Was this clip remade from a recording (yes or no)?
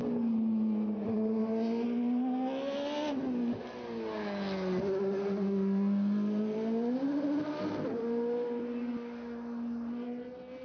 no